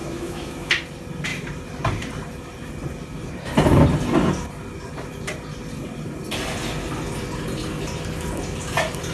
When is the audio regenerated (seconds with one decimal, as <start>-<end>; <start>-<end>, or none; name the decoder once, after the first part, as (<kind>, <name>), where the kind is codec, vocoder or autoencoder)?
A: 0.0-0.7 (autoencoder, DAC-VAE)